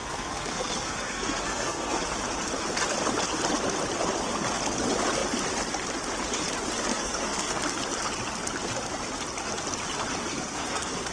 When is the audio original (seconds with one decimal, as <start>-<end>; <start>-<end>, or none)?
2.0-6.9; 7.5-10.2